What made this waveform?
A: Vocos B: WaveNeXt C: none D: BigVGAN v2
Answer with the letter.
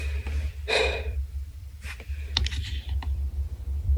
D